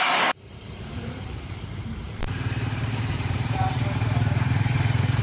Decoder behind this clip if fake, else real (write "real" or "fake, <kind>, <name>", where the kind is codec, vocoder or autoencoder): fake, vocoder, BigVGAN v2